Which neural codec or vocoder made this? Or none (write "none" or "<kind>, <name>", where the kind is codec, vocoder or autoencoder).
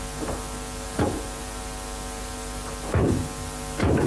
none